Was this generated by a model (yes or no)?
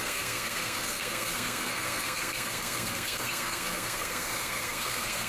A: yes